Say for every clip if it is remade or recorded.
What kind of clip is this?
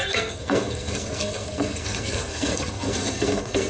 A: remade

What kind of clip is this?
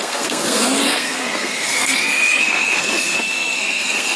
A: remade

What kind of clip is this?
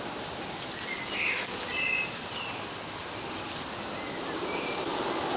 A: recorded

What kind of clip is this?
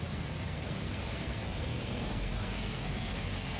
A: remade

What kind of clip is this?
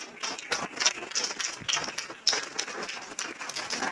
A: recorded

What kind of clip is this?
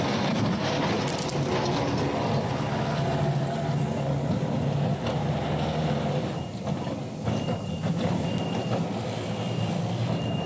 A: recorded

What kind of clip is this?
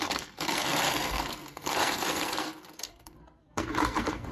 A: remade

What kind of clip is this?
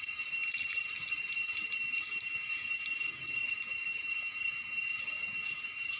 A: recorded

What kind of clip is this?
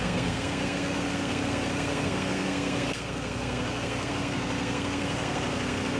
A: remade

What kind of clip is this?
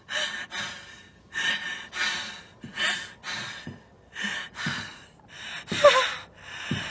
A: recorded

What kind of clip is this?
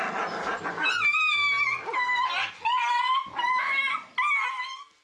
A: recorded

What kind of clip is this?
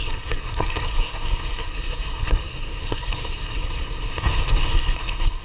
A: remade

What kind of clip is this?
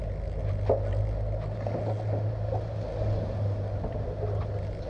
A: recorded